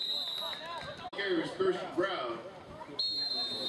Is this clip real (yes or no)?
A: yes